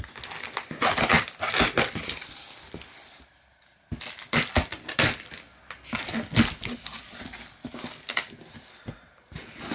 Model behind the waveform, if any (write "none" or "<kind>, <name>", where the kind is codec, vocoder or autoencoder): none